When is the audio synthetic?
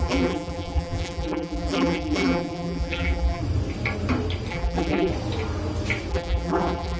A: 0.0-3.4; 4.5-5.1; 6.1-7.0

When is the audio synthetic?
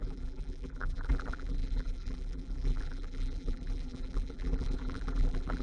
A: 0.0-5.6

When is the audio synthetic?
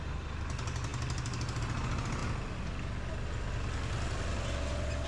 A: none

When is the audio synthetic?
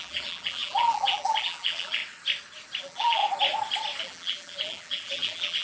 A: 0.0-2.0; 2.8-3.2; 4.0-5.6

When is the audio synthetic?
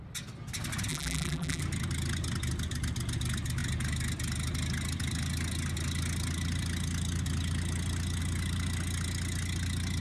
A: 0.9-1.6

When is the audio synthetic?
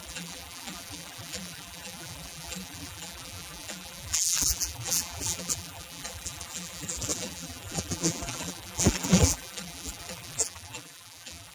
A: 0.0-11.5